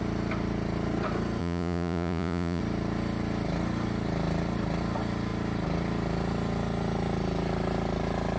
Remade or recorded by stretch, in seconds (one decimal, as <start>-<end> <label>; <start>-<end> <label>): 0.0-1.4 recorded; 1.4-2.6 remade; 2.6-8.4 recorded